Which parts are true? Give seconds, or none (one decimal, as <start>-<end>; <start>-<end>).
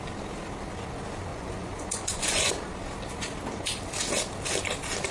0.0-1.3; 2.5-5.1